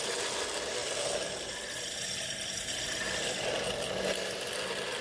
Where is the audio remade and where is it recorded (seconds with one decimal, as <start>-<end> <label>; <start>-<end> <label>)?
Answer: 0.0-5.0 recorded